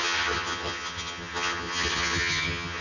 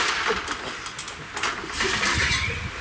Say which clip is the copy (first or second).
first